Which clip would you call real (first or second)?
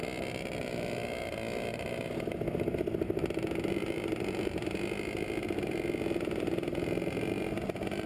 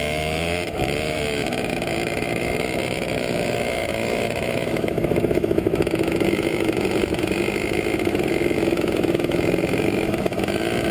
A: first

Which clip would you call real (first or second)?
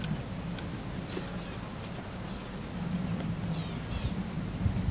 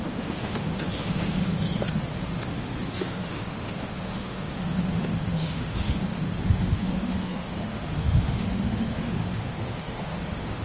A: first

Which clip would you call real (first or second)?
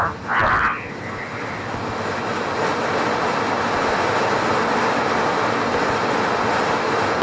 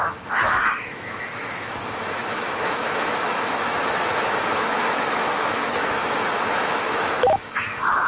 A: first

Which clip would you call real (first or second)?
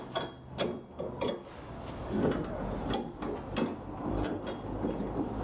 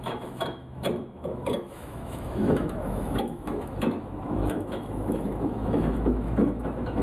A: first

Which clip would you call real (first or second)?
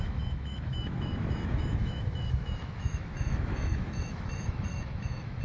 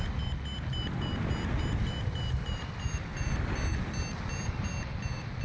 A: second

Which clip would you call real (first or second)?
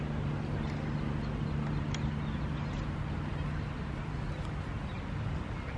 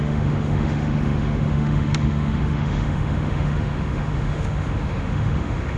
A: first